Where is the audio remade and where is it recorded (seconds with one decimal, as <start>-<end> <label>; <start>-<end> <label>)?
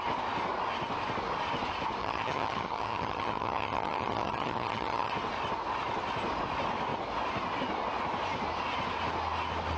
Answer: 0.0-2.0 recorded; 2.0-5.1 remade; 5.1-9.8 recorded